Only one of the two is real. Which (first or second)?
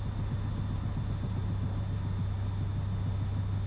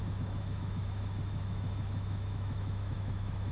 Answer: first